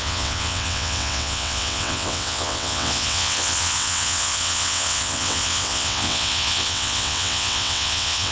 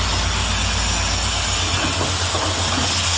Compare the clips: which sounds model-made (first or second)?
first